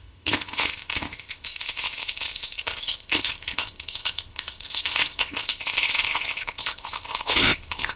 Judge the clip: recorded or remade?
remade